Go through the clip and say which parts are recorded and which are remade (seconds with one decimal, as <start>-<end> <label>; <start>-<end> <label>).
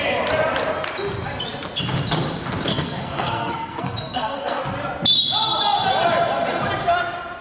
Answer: 0.0-2.7 recorded; 2.7-4.6 remade; 4.6-7.4 recorded